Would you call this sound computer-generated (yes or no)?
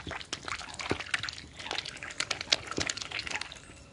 no